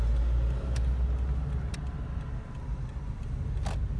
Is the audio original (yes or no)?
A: yes